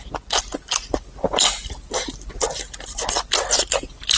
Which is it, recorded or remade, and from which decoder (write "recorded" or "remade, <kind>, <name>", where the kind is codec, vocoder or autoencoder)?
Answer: recorded